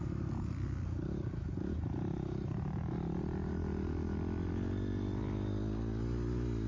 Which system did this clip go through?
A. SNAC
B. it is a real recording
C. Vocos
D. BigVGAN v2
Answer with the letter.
B